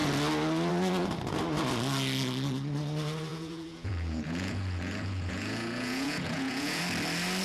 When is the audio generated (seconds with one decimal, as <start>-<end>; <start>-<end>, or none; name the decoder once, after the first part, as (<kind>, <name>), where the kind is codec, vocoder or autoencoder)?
3.3-6.8 (vocoder, Vocos)